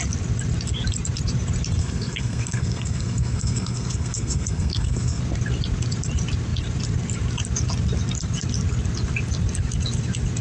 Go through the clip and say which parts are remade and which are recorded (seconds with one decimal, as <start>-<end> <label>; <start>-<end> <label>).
0.0-1.8 recorded; 1.8-5.2 remade; 5.2-10.4 recorded